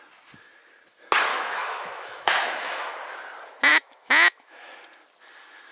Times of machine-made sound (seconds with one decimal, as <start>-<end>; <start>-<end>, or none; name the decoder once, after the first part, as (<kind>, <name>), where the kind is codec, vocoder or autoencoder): 1.3-2.9 (autoencoder, DAC-VAE); 3.7-4.7